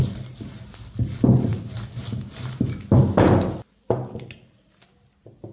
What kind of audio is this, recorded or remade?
recorded